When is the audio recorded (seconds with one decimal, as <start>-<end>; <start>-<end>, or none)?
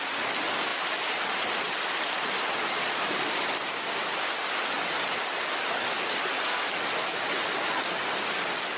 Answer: 0.0-0.7; 3.4-7.1; 7.7-8.8